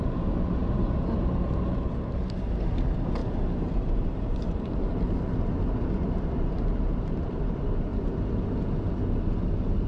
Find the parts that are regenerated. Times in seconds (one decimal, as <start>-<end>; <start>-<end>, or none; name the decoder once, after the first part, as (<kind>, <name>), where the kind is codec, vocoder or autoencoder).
3.2-7.4 (vocoder, BigVGAN v2)